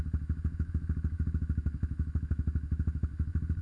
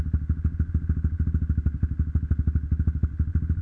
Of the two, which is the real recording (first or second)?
second